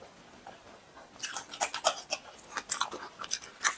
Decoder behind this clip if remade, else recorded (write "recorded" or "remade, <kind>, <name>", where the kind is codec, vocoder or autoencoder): remade, vocoder, BigVGAN v2